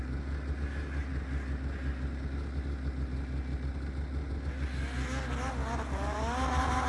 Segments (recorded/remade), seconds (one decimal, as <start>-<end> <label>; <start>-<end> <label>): 0.0-6.9 recorded

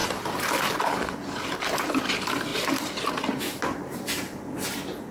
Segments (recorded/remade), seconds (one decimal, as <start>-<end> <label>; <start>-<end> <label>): 0.0-2.5 recorded; 2.5-3.1 remade; 3.1-5.1 recorded

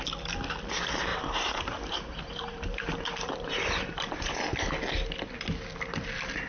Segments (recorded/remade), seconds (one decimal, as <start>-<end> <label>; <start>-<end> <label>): 0.0-1.1 recorded; 1.1-4.3 remade; 4.3-6.5 recorded

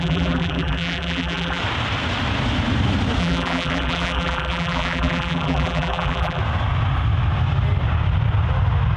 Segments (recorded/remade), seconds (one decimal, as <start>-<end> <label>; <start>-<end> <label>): 0.0-1.6 remade; 1.6-3.2 recorded; 3.2-6.4 remade; 6.4-9.0 recorded

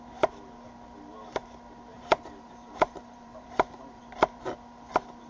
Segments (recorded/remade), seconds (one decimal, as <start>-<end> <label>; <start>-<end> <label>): 0.0-1.9 recorded; 1.9-4.0 remade; 4.0-5.3 recorded

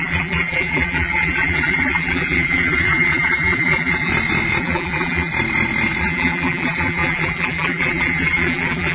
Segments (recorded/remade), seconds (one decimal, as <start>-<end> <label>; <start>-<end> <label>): 0.0-4.1 remade; 4.1-4.6 recorded; 4.6-5.3 remade; 5.3-6.0 recorded; 6.0-8.9 remade

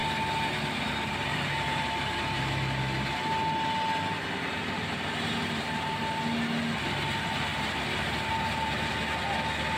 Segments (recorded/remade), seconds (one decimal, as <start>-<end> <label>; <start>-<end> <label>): 0.0-1.3 recorded; 1.3-2.5 remade; 2.5-4.6 recorded; 4.6-6.0 remade; 6.0-7.5 recorded; 7.5-8.9 remade; 8.9-9.8 recorded

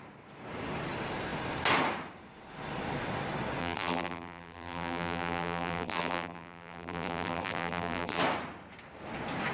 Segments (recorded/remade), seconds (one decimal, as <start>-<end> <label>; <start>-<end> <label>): 0.0-3.6 recorded; 3.6-8.2 remade; 8.2-9.5 recorded